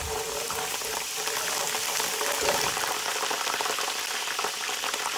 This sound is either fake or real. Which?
fake